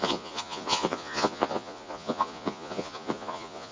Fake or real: fake